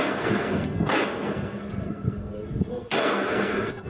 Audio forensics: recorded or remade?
remade